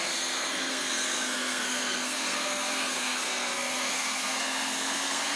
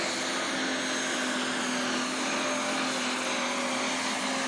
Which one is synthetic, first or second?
first